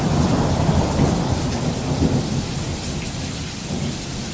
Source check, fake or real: real